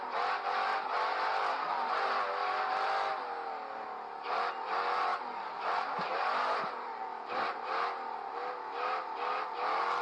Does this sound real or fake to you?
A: real